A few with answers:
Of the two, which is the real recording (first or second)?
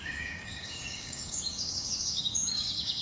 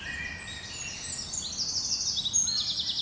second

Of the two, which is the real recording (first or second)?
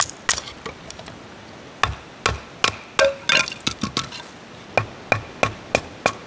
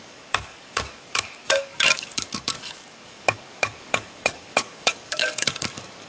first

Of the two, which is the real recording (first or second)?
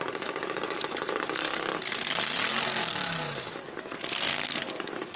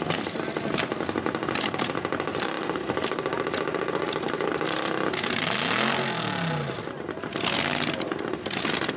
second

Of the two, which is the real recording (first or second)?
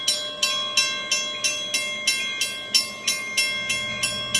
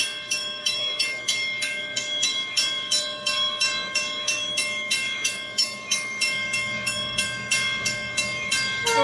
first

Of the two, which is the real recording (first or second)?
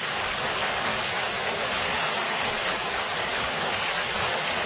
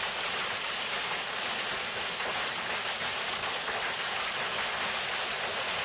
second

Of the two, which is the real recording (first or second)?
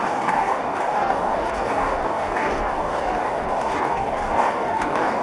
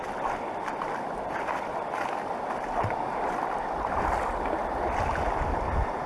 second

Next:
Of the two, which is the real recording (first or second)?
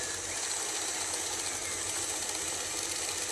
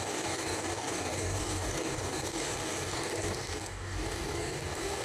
first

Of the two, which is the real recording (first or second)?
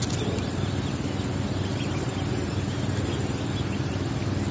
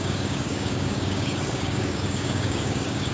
first